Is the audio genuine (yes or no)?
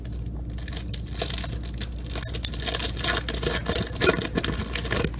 yes